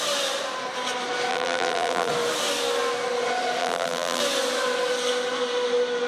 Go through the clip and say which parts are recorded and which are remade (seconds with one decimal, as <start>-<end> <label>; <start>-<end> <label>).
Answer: 0.0-1.3 recorded; 1.3-2.1 remade; 2.1-3.6 recorded; 3.6-4.2 remade; 4.2-6.1 recorded